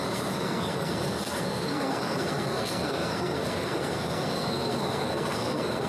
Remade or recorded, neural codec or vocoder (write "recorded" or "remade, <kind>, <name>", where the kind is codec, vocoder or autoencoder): remade, codec, SNAC